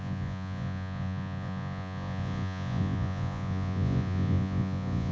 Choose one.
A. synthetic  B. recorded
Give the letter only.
A